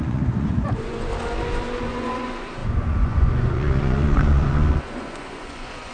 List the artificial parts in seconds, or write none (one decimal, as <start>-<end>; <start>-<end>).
0.0-1.1; 1.8-5.9

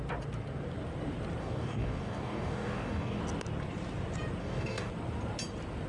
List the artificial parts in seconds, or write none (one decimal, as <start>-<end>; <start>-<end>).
1.4-3.2; 4.4-4.9